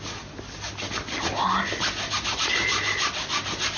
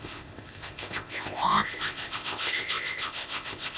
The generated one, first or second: second